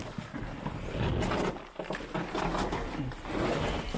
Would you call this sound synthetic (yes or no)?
no